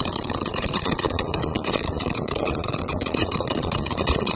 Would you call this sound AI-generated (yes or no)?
yes